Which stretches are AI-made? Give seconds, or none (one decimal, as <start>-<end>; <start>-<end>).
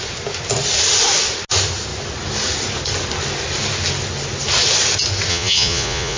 5.3-6.2